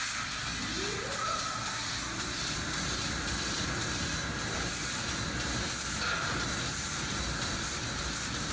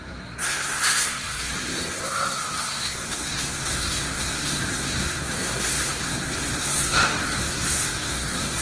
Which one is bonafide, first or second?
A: first